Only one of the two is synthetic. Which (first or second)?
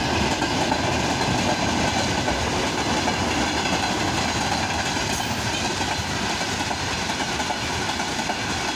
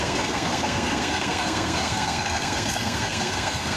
second